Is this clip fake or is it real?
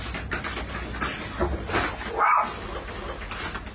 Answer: real